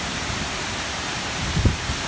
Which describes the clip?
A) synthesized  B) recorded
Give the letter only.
A